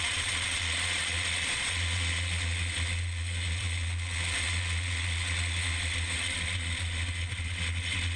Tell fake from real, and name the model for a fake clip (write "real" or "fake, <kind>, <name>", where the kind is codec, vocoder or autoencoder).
fake, vocoder, Vocos